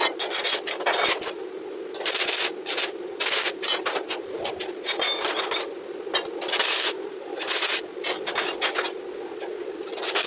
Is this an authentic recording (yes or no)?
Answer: yes